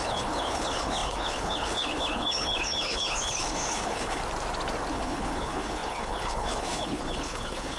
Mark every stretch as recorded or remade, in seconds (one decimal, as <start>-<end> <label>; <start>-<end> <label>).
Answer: 0.0-4.2 remade; 4.2-4.9 recorded; 4.9-7.8 remade